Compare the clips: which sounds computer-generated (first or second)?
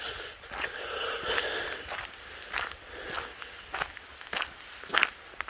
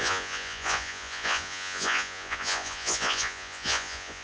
second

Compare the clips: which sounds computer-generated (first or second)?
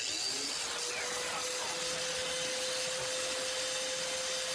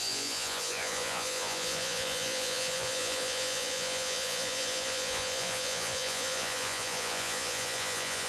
second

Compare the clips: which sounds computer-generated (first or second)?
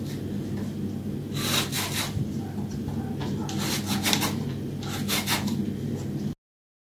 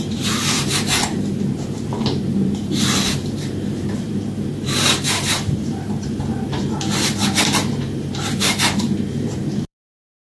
second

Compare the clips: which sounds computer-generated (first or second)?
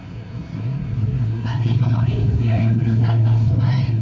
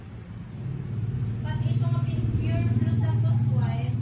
first